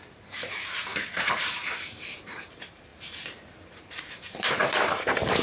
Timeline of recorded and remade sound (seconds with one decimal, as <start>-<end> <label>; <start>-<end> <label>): 0.0-5.4 remade